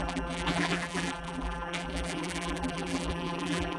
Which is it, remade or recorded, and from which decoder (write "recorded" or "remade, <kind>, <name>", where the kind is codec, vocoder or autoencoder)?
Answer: remade, vocoder, BigVGAN v2